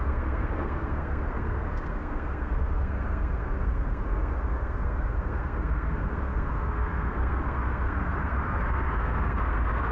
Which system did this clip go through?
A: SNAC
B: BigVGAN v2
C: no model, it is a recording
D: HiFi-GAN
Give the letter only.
A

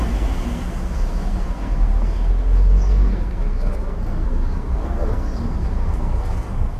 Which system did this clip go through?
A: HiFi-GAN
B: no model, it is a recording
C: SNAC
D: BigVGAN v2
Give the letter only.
C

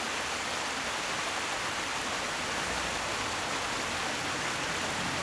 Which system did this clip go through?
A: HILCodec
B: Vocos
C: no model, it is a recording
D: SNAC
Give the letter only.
C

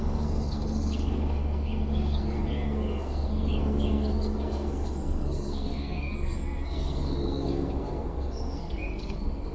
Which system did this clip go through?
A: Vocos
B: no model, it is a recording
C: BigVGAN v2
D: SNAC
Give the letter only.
D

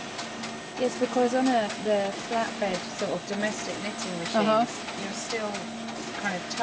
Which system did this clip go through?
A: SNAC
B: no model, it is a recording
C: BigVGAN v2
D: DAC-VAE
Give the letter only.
B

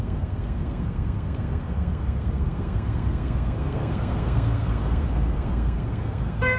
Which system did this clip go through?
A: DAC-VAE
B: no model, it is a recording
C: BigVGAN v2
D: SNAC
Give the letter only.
D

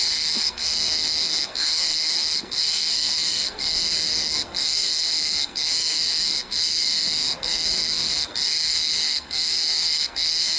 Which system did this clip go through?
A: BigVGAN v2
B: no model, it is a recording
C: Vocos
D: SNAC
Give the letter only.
D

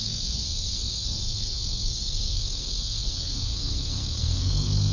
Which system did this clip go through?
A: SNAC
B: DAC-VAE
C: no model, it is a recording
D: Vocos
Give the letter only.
A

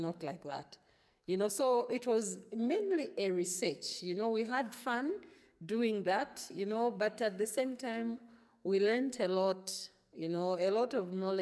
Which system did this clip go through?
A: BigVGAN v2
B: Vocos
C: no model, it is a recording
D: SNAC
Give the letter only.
D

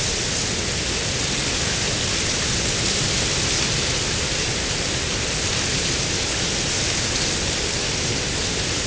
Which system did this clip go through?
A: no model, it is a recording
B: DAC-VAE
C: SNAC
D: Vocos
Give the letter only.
A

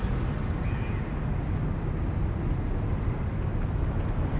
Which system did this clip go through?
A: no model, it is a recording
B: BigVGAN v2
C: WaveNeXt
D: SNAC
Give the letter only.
A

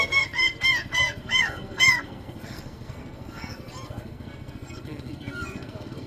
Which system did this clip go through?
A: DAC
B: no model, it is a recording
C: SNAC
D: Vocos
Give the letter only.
C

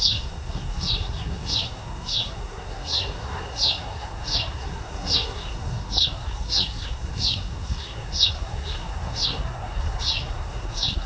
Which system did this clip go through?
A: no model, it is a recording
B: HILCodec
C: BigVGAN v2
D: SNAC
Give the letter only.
D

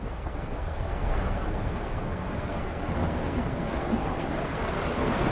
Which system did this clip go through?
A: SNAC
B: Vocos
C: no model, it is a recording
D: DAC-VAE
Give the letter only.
A